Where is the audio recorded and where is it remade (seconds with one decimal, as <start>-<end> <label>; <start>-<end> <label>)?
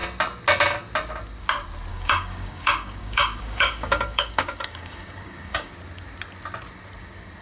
0.0-1.9 recorded; 1.9-5.7 remade; 5.7-7.4 recorded